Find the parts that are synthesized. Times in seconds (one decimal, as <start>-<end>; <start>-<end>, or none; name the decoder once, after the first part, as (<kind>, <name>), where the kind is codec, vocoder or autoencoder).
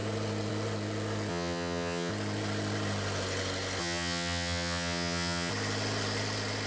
1.3-2.1 (vocoder, HiFi-GAN); 3.8-5.5